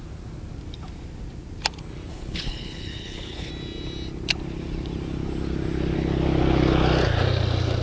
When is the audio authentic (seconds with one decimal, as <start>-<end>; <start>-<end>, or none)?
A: 0.0-2.1; 3.5-7.8